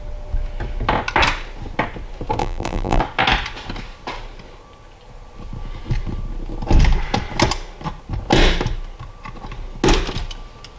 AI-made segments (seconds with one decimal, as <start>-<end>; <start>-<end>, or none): 2.4-3.0